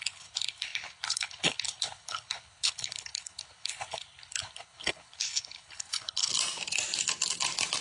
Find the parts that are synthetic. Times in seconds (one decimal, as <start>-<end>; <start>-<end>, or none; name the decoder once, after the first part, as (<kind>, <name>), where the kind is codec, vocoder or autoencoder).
0.0-6.3 (codec, HILCodec)